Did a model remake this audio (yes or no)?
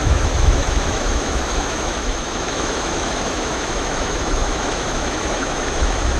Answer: yes